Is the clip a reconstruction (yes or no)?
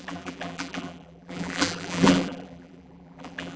yes